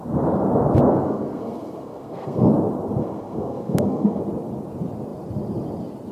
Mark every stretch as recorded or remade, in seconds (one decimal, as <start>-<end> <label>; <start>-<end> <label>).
0.0-0.9 recorded; 0.9-2.5 remade; 2.5-3.0 recorded; 3.0-4.2 remade; 4.2-6.1 recorded